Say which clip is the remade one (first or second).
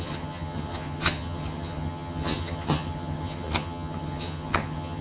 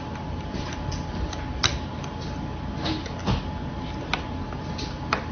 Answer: first